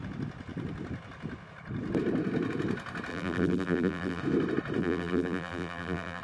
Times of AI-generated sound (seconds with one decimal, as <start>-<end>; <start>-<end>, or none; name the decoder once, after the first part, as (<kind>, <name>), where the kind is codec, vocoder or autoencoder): 3.1-4.2 (vocoder, BigVGAN v2); 4.8-6.2